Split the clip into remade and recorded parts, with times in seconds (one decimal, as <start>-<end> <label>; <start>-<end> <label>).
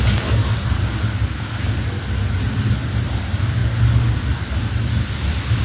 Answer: 0.0-5.6 recorded